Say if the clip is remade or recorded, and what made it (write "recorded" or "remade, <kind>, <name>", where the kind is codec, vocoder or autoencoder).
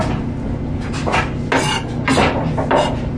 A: recorded